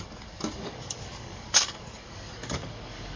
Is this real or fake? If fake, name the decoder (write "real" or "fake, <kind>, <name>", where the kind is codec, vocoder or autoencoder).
fake, codec, DAC